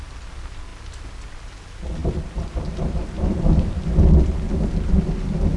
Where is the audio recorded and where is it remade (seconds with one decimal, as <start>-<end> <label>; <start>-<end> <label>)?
0.0-2.0 recorded; 2.0-3.9 remade; 3.9-5.6 recorded